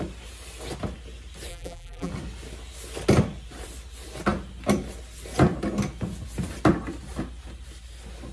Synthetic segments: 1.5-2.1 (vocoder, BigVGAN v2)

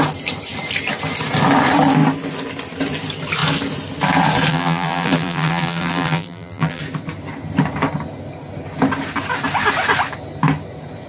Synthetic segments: 4.5-6.8 (vocoder, BigVGAN v2)

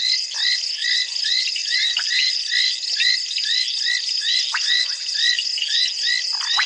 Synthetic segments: 1.6-2.4 (vocoder, BigVGAN v2)